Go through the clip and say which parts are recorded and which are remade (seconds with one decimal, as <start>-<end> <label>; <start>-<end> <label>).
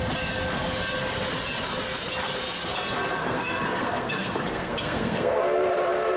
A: 0.0-3.2 recorded; 3.2-5.4 remade; 5.4-6.2 recorded